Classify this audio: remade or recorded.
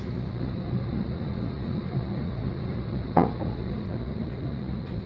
remade